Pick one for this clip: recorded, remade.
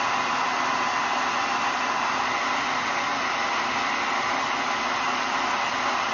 recorded